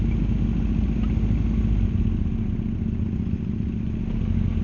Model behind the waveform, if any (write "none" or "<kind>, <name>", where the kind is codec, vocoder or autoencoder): none